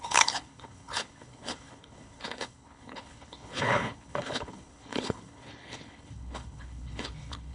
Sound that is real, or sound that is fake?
fake